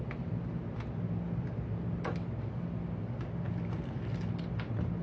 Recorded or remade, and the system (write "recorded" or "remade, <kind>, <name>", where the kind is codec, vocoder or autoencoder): recorded